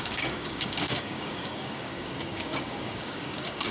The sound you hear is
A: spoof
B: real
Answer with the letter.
A